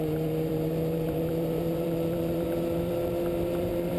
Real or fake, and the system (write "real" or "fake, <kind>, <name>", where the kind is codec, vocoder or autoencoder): fake, vocoder, BigVGAN v2